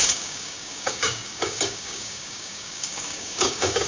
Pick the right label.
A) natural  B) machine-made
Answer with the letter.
B